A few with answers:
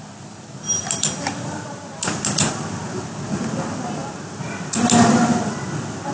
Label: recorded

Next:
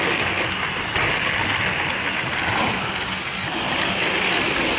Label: recorded